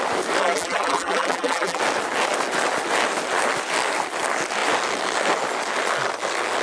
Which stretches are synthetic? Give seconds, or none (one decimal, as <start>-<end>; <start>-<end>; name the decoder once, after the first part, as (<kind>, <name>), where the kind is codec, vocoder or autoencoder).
0.4-1.8 (vocoder, BigVGAN v2)